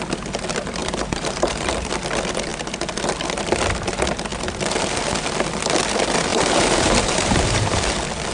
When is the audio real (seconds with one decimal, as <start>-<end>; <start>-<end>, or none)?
0.0-0.8; 1.9-6.3; 7.8-8.3